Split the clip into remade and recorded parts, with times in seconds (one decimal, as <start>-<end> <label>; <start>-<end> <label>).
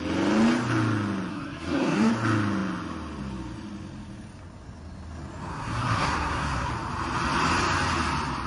0.0-1.3 recorded; 1.3-2.1 remade; 2.1-5.5 recorded; 5.5-6.7 remade; 6.7-8.5 recorded